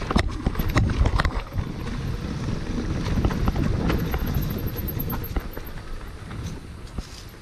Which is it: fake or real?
real